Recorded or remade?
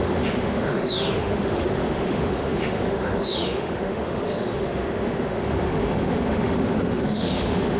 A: remade